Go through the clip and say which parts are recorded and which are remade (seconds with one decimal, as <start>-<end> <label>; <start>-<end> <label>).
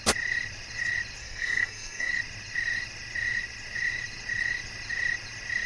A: 0.0-1.2 recorded; 1.2-2.1 remade; 2.1-5.7 recorded